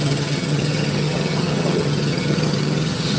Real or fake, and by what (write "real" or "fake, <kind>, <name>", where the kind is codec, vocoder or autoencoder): fake, vocoder, HiFi-GAN